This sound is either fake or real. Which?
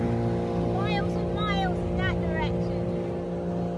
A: real